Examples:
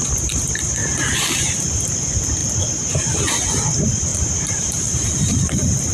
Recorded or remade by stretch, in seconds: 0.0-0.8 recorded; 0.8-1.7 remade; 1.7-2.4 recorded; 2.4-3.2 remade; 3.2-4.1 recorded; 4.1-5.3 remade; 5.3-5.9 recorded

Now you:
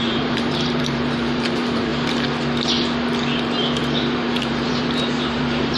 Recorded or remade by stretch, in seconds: 0.0-1.9 remade; 1.9-3.8 recorded; 3.8-5.8 remade

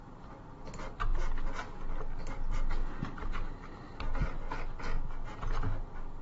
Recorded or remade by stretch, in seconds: 0.0-6.2 recorded

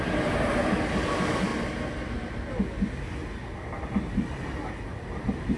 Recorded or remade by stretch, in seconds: 0.0-5.6 recorded

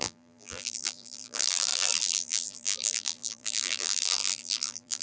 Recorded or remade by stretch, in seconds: 0.0-5.0 remade

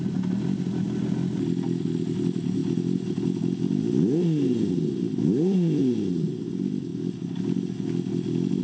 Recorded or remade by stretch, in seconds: 0.0-8.6 recorded

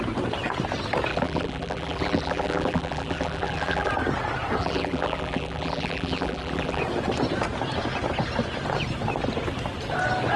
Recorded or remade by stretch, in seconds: 0.0-1.1 recorded; 1.1-3.9 remade; 3.9-4.6 recorded; 4.6-6.8 remade; 6.8-10.4 recorded

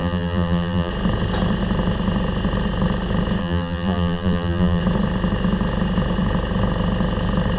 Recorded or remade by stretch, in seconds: 0.0-0.9 remade; 0.9-3.4 recorded; 3.4-4.8 remade; 4.8-7.6 recorded